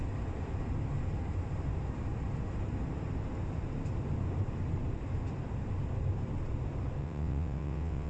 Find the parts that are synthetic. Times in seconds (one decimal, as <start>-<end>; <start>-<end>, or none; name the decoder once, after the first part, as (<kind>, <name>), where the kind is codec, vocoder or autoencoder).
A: 7.0-8.1 (vocoder, WaveNeXt)